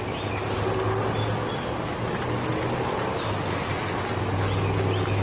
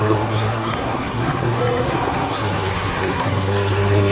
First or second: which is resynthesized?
second